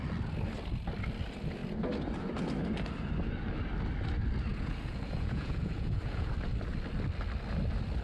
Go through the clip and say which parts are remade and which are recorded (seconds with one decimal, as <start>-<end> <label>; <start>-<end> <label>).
0.0-4.5 recorded; 4.5-6.3 remade; 6.3-8.0 recorded